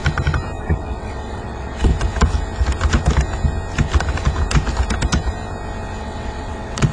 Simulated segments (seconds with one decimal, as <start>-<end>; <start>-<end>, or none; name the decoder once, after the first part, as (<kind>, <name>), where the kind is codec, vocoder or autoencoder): 0.6-1.9 (vocoder, WaveNeXt); 6.0-6.9